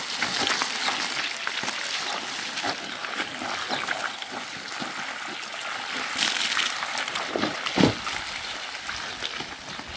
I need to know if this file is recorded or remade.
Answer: recorded